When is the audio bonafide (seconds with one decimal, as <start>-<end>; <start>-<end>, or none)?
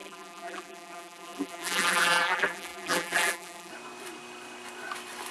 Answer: 3.7-5.3